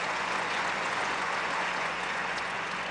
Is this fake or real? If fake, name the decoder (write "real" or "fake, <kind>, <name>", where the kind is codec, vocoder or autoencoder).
fake, vocoder, Vocos